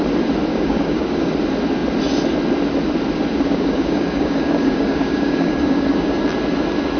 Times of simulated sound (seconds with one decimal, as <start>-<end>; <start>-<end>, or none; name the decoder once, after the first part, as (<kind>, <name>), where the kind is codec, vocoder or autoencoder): 0.5-1.3 (codec, DAC); 3.5-6.2

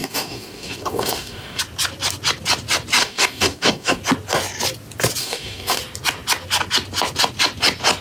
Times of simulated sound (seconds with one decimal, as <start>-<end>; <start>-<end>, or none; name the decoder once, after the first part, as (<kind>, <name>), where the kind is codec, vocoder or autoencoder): 0.0-1.6 (codec, DAC); 3.0-4.0; 5.2-5.8

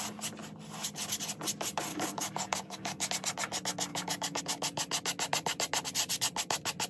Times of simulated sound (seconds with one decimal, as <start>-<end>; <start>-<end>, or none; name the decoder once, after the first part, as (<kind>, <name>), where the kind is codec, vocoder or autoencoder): 1.9-3.1 (codec, DAC); 3.9-4.4

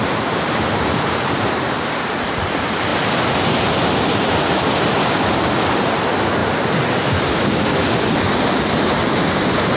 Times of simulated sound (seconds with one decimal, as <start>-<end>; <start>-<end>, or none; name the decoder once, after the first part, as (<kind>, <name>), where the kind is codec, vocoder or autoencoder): none

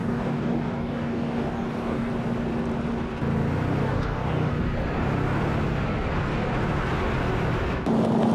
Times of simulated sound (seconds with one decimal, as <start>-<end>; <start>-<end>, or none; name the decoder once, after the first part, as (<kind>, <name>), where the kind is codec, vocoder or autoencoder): 0.0-2.1 (codec, DAC); 3.8-4.5

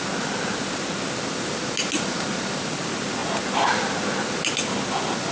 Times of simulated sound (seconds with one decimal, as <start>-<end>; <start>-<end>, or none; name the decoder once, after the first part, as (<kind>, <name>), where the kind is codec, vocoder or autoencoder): none